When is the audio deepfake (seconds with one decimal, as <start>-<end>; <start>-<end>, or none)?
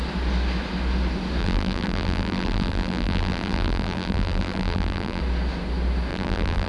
1.4-5.2; 6.1-6.7